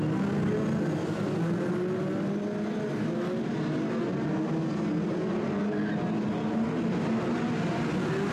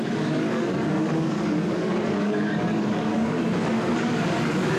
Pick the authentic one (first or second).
first